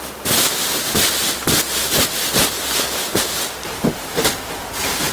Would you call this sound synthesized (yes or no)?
no